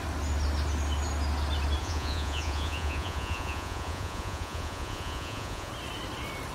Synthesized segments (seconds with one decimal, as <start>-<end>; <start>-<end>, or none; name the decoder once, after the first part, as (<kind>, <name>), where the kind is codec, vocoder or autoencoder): 1.8-5.7 (vocoder, Vocos)